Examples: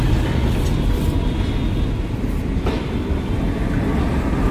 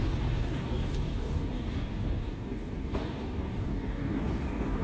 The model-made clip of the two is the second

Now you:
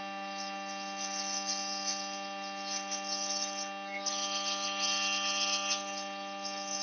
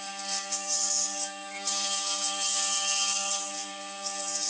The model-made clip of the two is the second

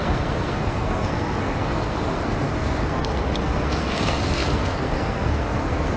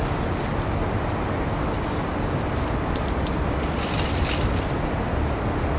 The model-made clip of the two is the first